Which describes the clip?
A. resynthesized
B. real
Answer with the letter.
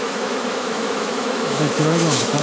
A